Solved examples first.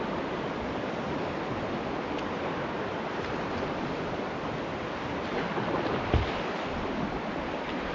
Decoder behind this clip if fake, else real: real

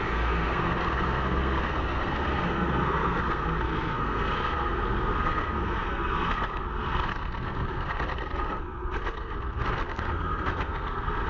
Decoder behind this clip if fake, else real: fake, codec, SNAC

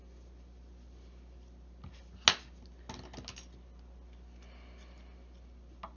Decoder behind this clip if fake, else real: real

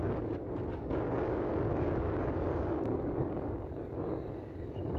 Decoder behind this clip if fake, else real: fake, codec, DAC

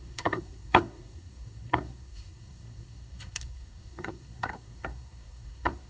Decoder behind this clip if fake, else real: fake, codec, SNAC